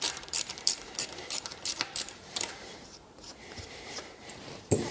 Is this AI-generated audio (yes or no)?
yes